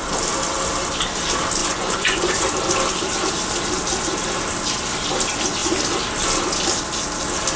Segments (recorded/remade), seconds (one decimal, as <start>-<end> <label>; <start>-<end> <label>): 0.0-1.6 recorded; 1.6-2.3 remade; 2.3-7.6 recorded